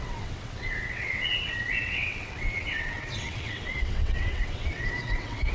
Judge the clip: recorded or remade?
remade